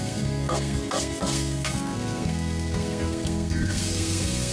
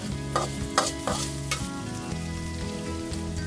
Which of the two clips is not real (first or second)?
first